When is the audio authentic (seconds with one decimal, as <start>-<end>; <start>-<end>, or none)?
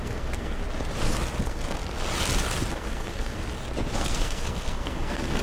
0.6-1.4; 1.8-2.7; 3.4-3.9